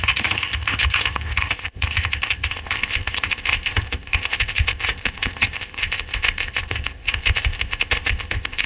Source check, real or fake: fake